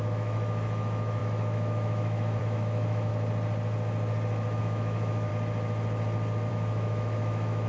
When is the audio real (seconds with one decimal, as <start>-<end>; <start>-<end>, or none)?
3.1-4.6; 5.3-6.5